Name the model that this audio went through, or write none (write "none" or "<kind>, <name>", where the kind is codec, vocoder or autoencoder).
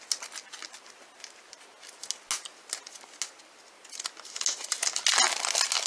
none